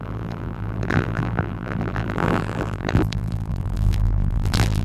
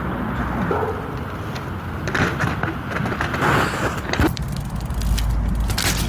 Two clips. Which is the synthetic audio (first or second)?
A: first